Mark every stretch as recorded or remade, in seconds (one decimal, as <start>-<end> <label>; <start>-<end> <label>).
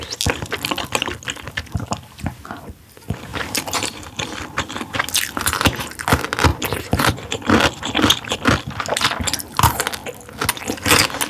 0.0-3.3 recorded; 3.3-3.9 remade; 3.9-6.5 recorded; 6.5-7.0 remade; 7.0-11.3 recorded